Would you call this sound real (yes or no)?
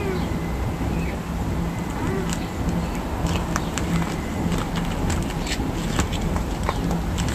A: no